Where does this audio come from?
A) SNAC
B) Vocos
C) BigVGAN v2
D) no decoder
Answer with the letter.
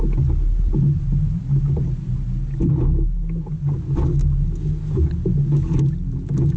D